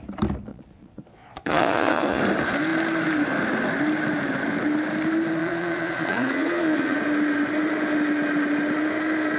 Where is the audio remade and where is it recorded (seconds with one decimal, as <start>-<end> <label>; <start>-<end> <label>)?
0.0-0.5 recorded; 0.5-2.2 remade; 2.2-5.4 recorded; 5.4-7.0 remade; 7.0-9.4 recorded

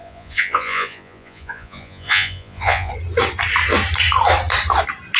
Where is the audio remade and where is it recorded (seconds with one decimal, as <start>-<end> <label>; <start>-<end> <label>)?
0.0-2.9 remade; 2.9-5.2 recorded